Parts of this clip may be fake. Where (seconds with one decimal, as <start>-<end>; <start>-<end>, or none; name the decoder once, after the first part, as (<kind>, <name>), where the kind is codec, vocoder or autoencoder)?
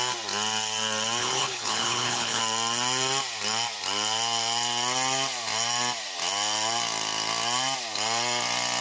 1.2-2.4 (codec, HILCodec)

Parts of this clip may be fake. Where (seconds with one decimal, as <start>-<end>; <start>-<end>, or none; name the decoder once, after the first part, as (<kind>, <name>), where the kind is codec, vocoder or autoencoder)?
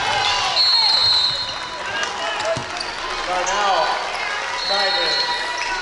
none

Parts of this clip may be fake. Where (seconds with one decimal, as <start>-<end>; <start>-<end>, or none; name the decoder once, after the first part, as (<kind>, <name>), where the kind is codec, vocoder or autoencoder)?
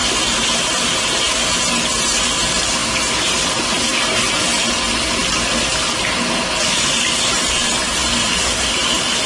none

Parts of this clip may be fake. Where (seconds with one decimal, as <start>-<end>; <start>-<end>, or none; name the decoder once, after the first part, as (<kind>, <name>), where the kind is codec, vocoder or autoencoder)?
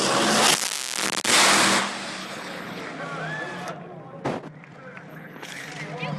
2.2-2.8 (codec, HILCodec); 5.1-5.7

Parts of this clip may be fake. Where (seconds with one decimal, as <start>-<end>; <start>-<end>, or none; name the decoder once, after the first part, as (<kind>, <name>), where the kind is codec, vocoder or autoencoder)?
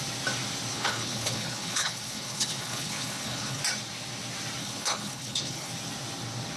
0.7-3.6 (codec, HILCodec); 4.6-5.7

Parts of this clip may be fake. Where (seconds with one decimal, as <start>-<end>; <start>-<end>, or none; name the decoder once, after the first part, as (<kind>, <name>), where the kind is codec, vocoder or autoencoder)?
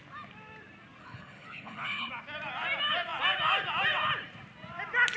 1.0-2.1 (codec, HILCodec)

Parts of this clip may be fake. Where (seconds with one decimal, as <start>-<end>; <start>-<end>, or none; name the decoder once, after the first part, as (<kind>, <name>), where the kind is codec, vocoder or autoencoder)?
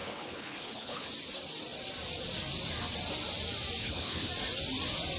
0.0-1.1 (codec, HILCodec); 3.8-4.3